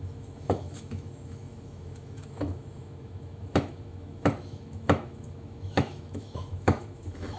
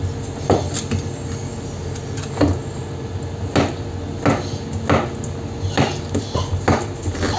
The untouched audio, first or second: second